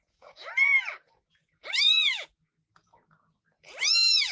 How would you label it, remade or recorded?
remade